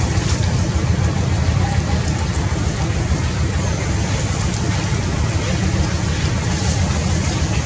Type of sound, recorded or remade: recorded